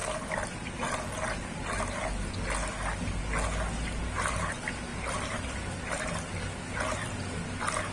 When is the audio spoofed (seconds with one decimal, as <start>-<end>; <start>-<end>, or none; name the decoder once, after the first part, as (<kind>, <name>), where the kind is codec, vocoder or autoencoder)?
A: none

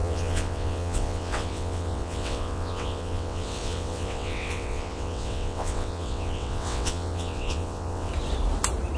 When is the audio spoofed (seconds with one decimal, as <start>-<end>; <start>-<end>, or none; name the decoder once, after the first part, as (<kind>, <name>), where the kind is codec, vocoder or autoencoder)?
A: 0.0-8.1 (vocoder, WaveNeXt)

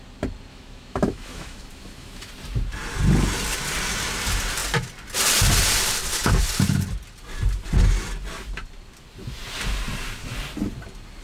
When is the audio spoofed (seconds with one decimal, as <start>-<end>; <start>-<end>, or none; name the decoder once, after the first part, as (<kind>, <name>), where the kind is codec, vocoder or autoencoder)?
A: 0.5-2.3 (autoencoder, DAC-VAE)

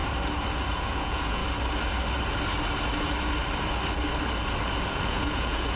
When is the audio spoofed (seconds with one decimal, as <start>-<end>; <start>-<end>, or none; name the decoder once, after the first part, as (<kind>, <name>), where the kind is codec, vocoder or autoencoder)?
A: 0.7-1.4 (vocoder, Vocos); 4.9-5.8

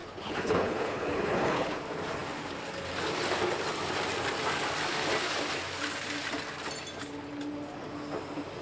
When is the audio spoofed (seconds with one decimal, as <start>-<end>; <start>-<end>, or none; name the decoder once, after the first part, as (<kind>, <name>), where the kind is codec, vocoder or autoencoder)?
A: 0.0-1.8 (codec, HILCodec)

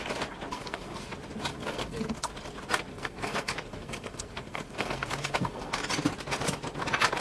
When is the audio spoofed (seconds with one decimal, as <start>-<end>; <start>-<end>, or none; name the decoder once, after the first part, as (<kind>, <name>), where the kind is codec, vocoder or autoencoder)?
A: 0.5-1.1 (codec, SNAC); 1.5-2.3; 2.9-5.7

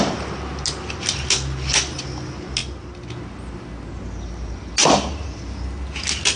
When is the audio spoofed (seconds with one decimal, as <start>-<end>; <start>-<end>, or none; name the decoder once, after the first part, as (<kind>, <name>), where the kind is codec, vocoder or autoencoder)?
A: none